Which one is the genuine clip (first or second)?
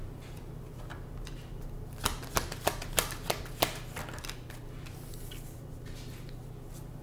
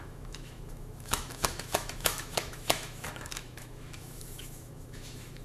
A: first